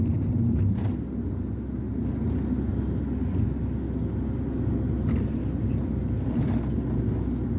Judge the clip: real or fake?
real